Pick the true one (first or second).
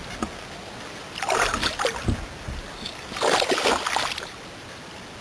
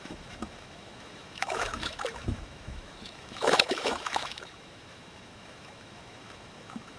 first